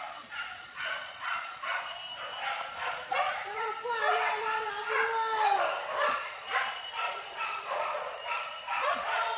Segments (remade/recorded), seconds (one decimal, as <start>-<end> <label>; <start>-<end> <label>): 0.0-2.0 remade; 2.0-2.7 recorded; 2.7-3.7 remade; 3.7-6.0 recorded; 6.0-9.4 remade